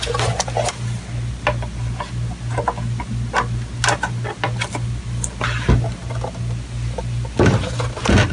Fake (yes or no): no